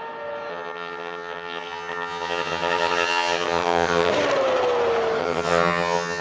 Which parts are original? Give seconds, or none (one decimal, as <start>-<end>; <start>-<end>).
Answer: 0.0-0.5; 4.1-5.2